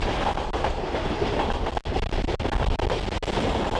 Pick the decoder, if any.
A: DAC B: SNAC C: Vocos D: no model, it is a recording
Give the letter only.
D